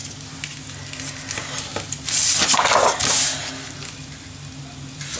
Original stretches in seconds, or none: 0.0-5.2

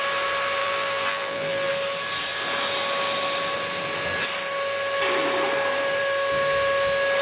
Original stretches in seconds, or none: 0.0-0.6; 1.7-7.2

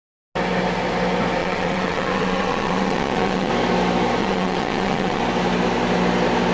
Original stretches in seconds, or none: 0.0-1.4; 3.5-4.2; 5.2-6.5

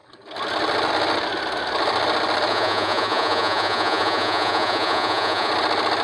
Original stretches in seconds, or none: 0.0-2.5; 5.5-6.0